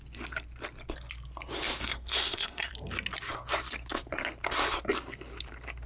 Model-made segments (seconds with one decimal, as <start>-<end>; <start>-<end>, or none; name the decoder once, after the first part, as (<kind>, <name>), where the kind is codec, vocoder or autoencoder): 1.8-2.7 (codec, SNAC)